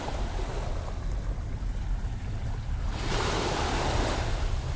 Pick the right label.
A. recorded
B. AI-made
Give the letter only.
A